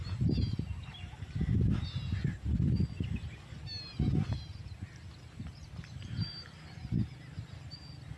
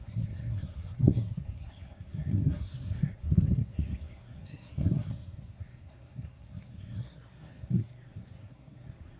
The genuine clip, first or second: first